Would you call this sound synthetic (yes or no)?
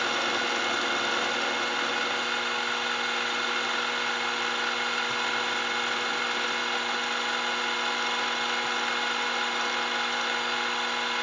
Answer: no